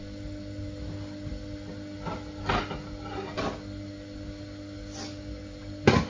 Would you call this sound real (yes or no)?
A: yes